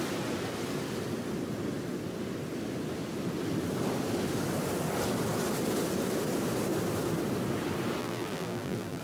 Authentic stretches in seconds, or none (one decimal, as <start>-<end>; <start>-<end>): 0.0-8.0